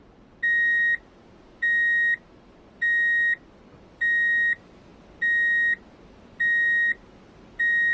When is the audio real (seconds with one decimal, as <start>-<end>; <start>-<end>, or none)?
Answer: 0.0-7.9